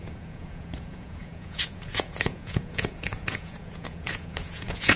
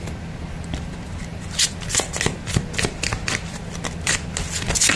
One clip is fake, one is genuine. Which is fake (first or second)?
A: first